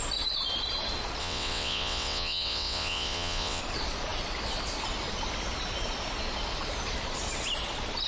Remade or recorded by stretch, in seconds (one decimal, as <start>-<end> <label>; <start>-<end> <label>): 0.0-1.2 recorded; 1.2-3.6 remade; 3.6-8.1 recorded